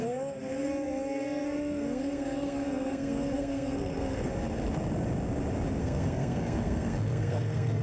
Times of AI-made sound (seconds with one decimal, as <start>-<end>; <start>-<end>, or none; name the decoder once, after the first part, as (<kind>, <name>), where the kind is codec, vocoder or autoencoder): 0.0-4.3 (codec, SNAC); 5.8-7.8